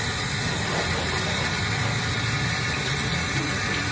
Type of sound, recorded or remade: recorded